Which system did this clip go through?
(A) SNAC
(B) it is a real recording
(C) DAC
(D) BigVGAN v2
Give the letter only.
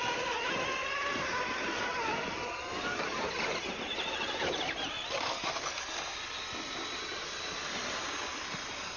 B